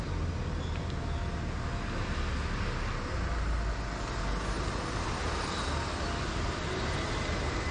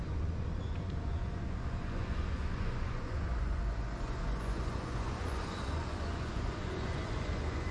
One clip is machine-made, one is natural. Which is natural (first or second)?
first